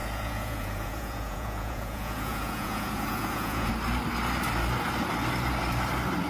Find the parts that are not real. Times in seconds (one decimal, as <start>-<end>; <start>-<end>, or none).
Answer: 0.0-3.7

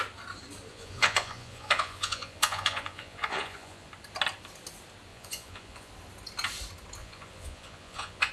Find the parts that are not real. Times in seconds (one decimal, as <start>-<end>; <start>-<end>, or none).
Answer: 0.7-3.9; 5.1-5.9; 7.0-8.3

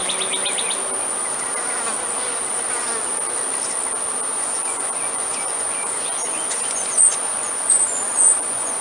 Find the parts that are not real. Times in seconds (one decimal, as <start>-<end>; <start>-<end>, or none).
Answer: 4.3-8.8

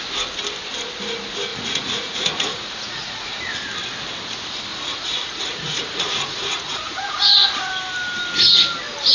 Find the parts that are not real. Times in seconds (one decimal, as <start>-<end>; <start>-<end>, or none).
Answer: 1.5-3.4; 4.7-7.7

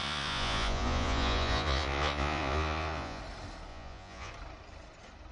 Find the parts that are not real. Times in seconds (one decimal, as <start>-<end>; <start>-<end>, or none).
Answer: 0.0-3.2; 3.7-4.3